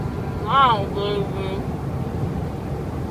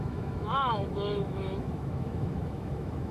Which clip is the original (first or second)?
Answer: first